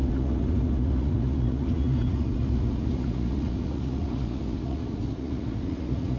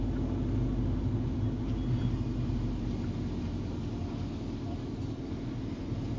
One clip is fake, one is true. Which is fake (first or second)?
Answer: first